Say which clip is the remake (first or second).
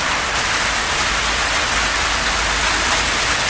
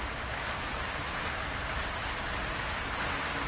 second